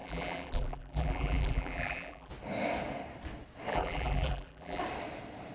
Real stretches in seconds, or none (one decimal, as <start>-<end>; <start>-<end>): 2.3-3.7; 4.8-5.5